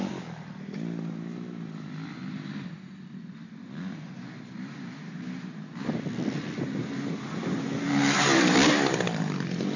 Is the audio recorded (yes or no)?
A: yes